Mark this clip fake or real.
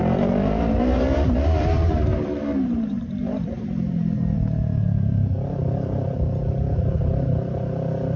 fake